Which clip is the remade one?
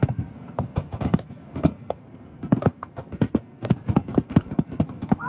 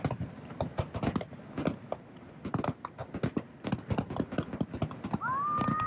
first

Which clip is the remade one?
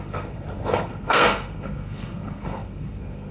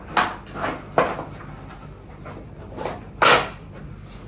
first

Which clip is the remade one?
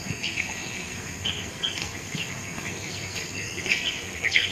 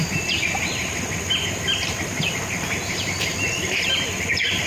first